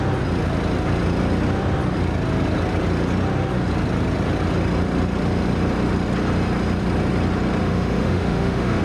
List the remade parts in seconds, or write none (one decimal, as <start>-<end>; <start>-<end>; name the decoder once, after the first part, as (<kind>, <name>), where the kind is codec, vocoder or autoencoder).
7.6-8.8 (autoencoder, DAC-VAE)